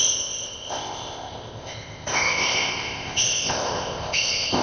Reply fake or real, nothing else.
fake